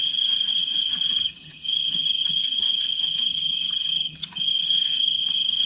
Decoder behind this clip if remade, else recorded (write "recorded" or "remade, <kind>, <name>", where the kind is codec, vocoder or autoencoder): remade, vocoder, HiFi-GAN